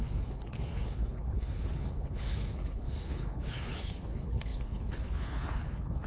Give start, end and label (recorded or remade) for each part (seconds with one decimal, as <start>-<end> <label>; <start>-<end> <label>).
0.0-6.1 remade